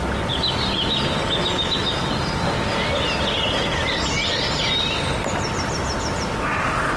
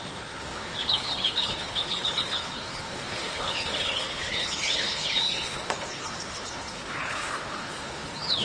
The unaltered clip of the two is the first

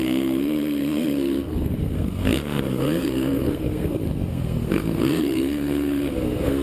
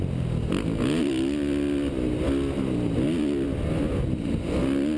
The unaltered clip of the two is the second